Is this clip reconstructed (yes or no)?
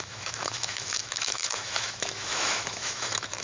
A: yes